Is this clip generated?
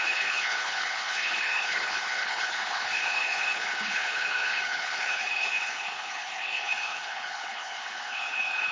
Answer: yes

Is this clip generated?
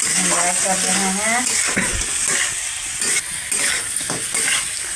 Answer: no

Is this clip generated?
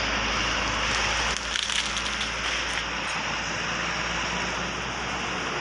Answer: no